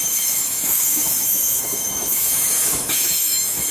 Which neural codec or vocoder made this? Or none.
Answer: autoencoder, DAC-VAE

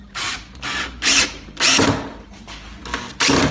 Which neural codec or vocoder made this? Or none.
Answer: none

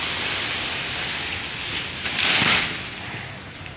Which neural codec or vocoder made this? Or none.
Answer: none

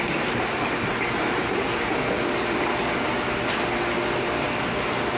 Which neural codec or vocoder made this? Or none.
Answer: none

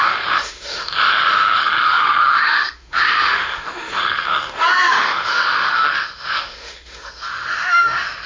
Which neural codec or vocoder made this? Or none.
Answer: autoencoder, DAC-VAE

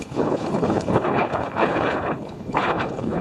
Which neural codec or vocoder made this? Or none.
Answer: codec, HILCodec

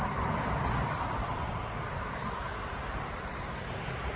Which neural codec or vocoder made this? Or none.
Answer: none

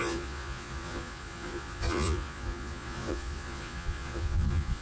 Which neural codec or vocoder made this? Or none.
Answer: vocoder, Vocos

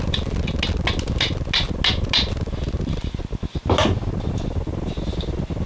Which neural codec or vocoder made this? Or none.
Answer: none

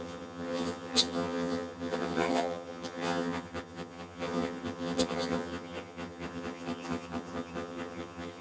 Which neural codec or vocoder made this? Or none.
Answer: vocoder, HiFi-GAN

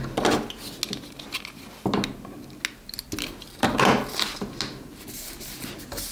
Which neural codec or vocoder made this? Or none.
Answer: none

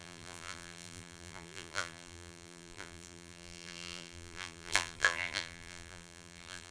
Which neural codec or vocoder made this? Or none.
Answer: vocoder, BigVGAN v2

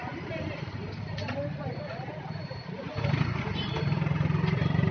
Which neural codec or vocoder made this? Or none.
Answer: none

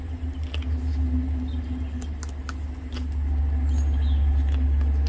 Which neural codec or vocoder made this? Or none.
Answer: none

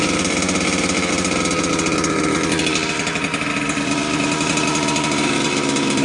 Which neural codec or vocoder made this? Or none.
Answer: none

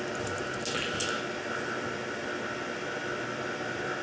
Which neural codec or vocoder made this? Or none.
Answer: none